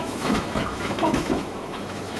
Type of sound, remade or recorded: remade